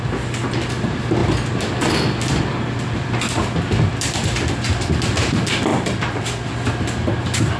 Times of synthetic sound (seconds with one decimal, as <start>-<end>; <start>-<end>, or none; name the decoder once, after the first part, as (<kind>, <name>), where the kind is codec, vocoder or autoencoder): none